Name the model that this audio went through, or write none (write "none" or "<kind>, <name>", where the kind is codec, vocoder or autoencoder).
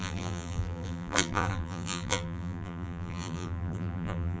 vocoder, BigVGAN v2